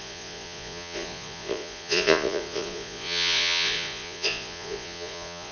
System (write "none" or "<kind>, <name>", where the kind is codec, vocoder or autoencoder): vocoder, Vocos